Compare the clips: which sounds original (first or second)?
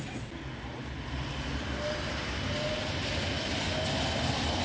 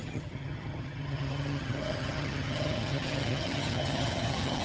first